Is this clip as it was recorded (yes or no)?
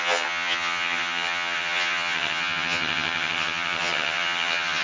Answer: no